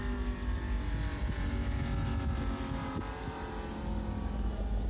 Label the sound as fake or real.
real